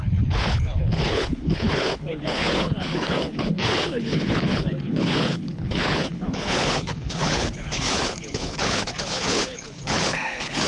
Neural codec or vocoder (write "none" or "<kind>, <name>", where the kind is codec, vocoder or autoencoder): codec, HILCodec